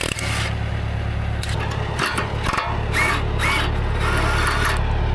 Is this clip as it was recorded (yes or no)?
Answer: yes